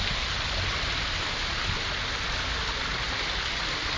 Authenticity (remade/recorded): recorded